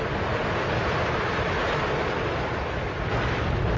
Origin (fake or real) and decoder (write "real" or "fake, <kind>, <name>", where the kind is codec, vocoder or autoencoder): real